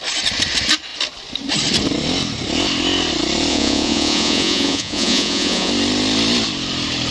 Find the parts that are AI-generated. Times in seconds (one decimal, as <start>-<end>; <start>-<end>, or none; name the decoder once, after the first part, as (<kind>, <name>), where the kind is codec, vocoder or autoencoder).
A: 3.5-5.7 (vocoder, Vocos)